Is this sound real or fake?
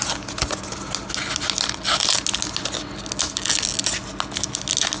real